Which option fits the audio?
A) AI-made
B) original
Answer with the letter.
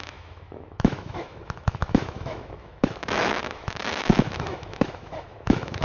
A